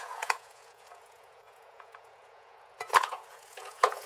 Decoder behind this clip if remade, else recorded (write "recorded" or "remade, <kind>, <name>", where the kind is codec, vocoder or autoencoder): remade, vocoder, Vocos